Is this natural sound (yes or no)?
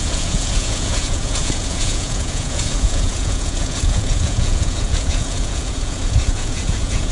no